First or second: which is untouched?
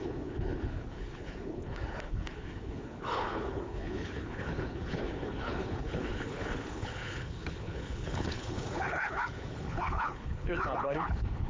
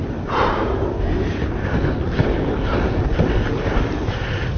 second